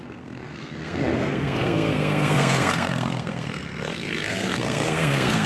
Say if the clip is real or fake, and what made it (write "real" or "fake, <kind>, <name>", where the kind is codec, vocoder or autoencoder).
fake, codec, SNAC